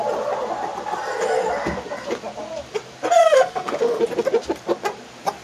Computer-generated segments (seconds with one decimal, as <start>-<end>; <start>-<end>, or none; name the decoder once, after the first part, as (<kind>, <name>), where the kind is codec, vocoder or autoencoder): 3.2-4.0 (autoencoder, DAC-VAE)